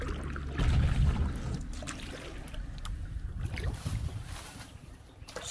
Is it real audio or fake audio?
real